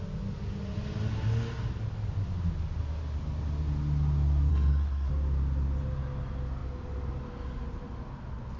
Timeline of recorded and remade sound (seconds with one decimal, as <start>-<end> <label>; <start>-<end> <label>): 0.0-4.5 recorded; 4.5-5.1 remade; 5.1-8.6 recorded